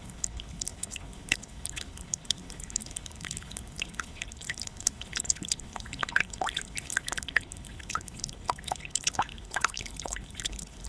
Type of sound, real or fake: fake